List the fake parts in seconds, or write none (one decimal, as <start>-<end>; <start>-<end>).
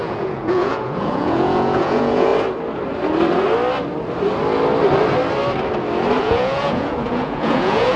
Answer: 0.0-2.3; 6.2-8.0